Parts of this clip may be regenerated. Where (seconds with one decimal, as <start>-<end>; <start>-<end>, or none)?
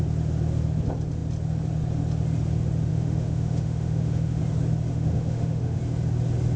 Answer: 2.9-4.4; 4.9-5.8